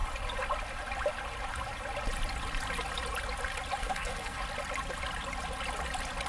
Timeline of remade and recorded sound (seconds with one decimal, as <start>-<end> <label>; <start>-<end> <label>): 0.0-3.8 recorded; 3.8-4.4 remade; 4.4-6.3 recorded